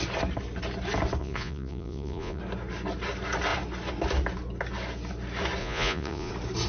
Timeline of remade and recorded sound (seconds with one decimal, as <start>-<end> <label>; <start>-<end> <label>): 0.0-1.2 recorded; 1.2-2.4 remade; 2.4-5.6 recorded; 5.6-6.3 remade; 6.3-6.7 recorded